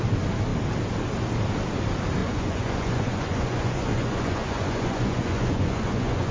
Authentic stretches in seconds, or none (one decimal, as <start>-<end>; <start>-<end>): 0.0-2.2